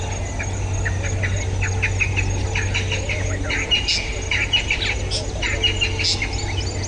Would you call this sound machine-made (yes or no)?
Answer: no